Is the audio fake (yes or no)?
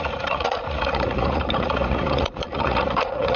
yes